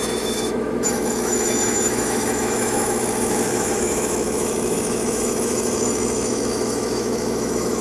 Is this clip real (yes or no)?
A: no